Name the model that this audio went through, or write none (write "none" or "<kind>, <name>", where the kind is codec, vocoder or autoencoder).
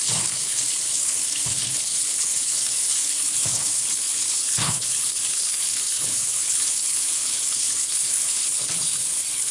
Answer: codec, HILCodec